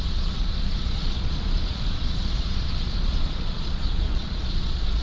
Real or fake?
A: fake